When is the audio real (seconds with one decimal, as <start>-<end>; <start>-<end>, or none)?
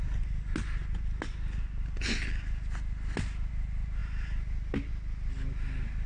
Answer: 0.0-6.1